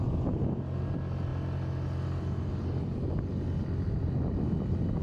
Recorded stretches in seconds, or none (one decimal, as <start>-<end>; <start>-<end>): 0.0-5.0